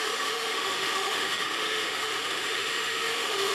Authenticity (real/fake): fake